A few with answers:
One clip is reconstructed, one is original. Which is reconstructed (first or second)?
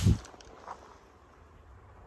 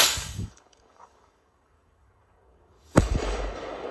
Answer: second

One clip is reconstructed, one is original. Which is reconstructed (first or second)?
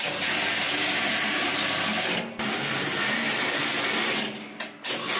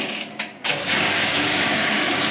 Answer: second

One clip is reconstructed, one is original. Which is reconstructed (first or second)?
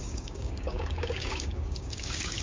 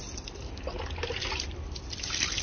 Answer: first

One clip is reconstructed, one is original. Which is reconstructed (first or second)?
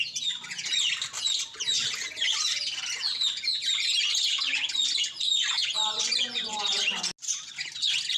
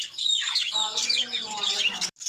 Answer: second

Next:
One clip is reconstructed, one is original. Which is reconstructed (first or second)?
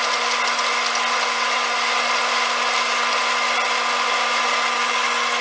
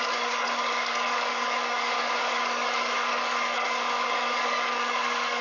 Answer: second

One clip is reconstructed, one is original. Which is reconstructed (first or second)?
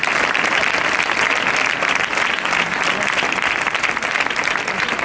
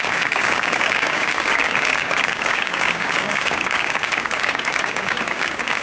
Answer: second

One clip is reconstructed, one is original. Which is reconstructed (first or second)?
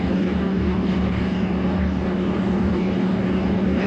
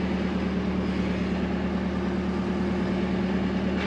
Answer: first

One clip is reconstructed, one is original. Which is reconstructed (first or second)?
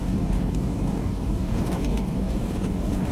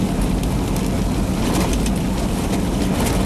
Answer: first